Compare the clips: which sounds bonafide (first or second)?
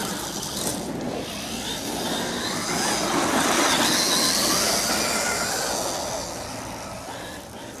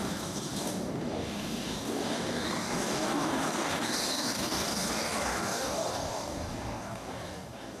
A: first